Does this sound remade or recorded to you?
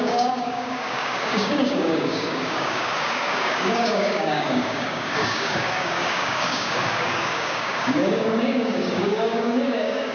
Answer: remade